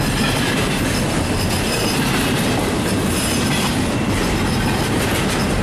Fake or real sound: real